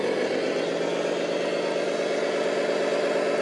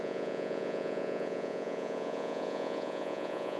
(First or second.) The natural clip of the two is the first